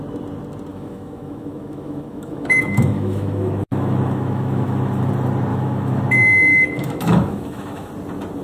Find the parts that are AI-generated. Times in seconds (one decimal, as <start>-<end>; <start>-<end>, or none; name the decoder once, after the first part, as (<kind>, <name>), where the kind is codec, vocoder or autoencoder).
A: 0.7-5.1 (autoencoder, DAC-VAE); 5.5-6.0; 6.5-7.9